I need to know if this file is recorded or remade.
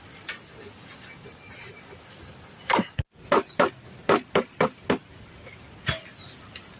recorded